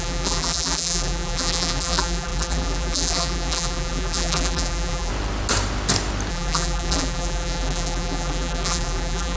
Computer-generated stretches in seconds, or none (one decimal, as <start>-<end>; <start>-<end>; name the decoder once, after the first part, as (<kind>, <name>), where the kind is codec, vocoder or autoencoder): 0.0-5.1 (vocoder, BigVGAN v2); 6.3-9.4